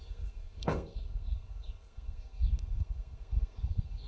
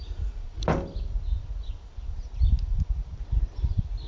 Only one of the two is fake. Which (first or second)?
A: first